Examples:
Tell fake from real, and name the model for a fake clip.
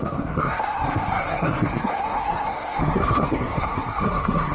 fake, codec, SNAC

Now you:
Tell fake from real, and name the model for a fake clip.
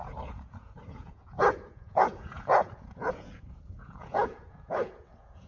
fake, vocoder, Vocos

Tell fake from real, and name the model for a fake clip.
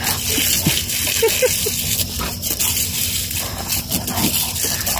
real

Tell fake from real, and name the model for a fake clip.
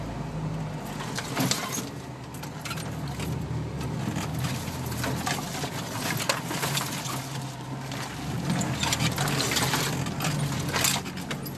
real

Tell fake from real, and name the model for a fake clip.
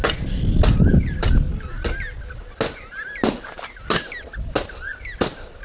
real